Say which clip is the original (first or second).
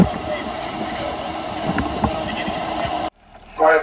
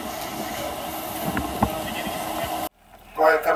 second